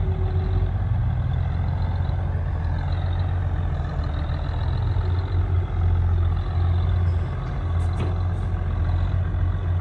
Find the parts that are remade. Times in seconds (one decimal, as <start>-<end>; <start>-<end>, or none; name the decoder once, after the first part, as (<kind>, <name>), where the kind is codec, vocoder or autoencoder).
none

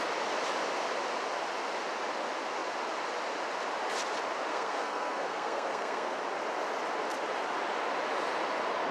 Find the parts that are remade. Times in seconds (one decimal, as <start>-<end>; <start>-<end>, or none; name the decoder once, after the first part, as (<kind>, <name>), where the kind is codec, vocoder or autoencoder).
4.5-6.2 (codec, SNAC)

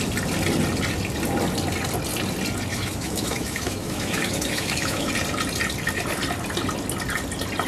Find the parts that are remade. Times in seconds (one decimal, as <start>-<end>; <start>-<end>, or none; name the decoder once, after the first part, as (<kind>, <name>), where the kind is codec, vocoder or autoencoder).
2.7-5.1 (autoencoder, DAC-VAE)

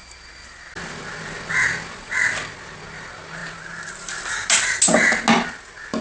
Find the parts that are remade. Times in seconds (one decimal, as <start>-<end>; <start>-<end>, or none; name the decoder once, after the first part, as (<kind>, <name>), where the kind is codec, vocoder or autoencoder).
none